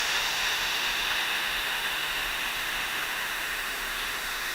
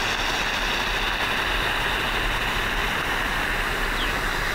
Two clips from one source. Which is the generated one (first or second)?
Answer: first